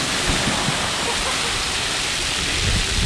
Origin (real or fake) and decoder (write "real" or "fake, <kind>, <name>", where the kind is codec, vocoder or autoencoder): real